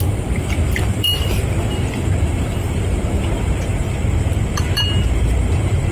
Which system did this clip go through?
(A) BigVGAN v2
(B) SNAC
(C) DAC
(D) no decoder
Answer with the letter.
A